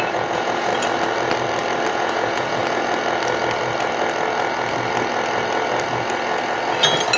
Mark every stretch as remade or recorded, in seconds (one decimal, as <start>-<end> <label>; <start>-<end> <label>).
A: 0.0-0.7 remade; 0.7-1.9 recorded; 1.9-2.6 remade; 2.6-7.2 recorded